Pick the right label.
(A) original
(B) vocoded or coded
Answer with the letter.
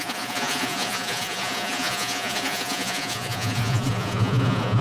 B